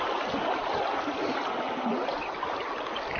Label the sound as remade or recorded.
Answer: recorded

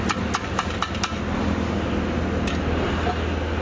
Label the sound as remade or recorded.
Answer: recorded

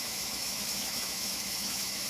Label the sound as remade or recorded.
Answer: remade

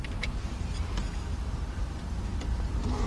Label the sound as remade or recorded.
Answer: recorded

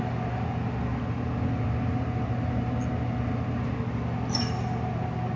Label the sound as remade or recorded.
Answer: recorded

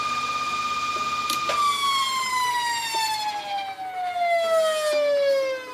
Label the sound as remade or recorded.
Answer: recorded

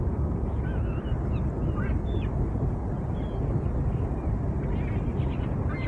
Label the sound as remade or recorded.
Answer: recorded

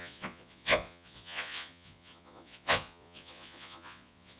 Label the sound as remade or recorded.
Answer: remade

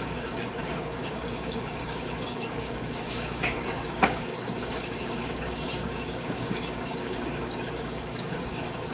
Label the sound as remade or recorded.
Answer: remade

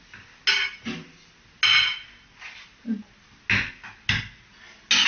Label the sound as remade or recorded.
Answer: recorded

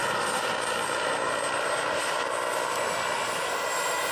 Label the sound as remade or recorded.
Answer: recorded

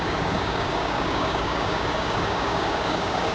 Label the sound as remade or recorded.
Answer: remade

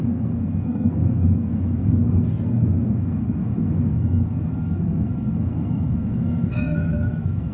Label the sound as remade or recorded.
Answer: remade